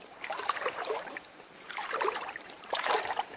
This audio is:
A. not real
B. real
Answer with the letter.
A